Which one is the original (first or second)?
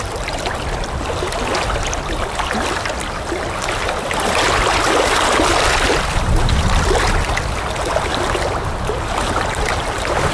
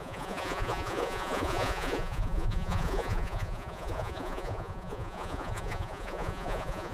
first